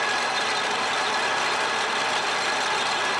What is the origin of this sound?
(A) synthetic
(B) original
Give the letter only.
B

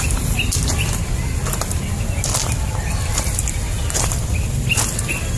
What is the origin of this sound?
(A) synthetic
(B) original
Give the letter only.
B